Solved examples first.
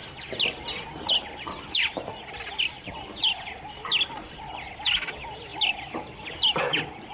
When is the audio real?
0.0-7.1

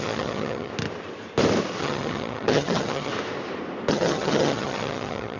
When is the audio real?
0.7-1.8; 3.1-3.9